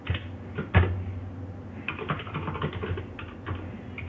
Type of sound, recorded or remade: recorded